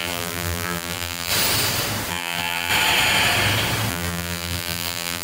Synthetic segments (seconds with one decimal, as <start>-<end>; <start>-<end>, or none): 0.0-1.3; 2.1-2.7; 3.9-5.2